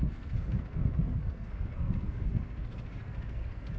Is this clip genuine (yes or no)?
no